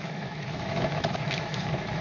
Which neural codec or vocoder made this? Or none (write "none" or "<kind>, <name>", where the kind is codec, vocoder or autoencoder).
autoencoder, DAC-VAE